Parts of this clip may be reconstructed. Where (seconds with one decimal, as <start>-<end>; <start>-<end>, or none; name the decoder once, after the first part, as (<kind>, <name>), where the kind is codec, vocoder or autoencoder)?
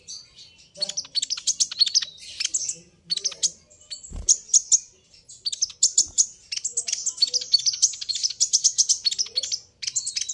none